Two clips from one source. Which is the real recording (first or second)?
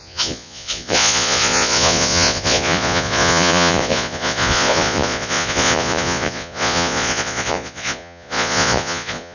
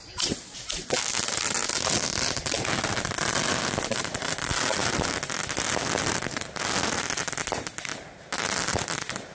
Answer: second